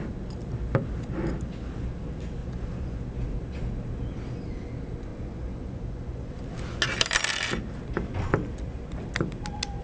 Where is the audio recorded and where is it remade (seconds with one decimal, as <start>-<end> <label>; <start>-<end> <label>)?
0.0-2.4 recorded; 2.4-3.0 remade; 3.0-5.1 recorded; 5.1-6.4 remade; 6.4-9.8 recorded